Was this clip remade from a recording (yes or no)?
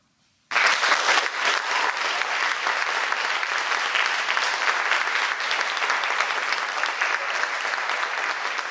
no